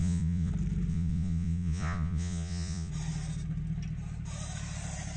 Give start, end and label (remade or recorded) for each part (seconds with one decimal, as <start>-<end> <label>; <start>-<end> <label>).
0.0-0.5 remade; 0.5-0.9 recorded; 0.9-2.9 remade; 2.9-5.2 recorded